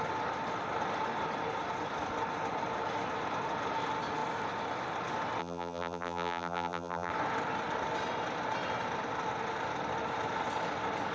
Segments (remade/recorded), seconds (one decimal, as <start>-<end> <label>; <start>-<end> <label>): 0.0-5.4 recorded; 5.4-7.1 remade; 7.1-11.1 recorded